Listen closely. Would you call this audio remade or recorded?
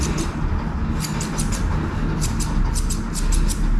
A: recorded